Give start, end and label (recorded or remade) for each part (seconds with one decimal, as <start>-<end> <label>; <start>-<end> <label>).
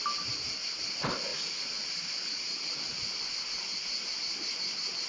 0.0-5.1 recorded